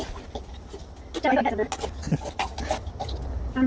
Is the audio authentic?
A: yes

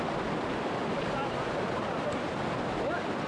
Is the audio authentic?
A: yes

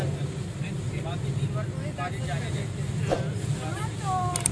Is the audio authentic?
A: yes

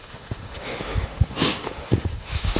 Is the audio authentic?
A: no